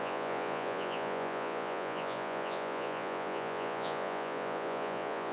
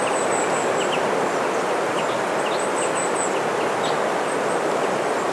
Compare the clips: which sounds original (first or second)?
second